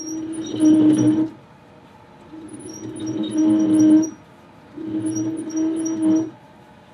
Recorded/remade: recorded